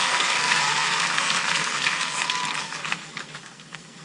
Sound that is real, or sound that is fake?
fake